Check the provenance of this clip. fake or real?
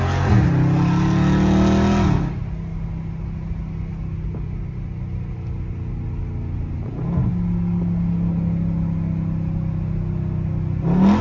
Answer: real